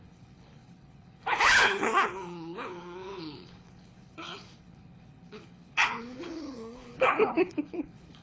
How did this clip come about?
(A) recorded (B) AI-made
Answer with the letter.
B